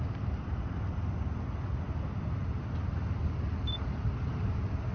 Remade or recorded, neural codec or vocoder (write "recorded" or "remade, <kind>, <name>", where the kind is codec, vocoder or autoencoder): recorded